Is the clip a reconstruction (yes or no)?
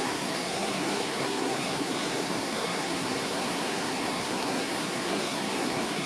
yes